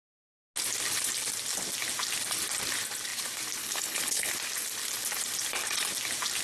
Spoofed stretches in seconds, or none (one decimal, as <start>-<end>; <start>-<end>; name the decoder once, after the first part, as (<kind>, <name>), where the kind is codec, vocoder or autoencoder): 3.6-4.3 (codec, HILCodec)